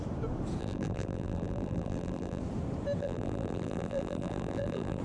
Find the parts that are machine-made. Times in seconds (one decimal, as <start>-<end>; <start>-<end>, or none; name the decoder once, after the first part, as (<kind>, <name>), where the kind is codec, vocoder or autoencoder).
0.6-2.4 (vocoder, BigVGAN v2); 3.0-5.0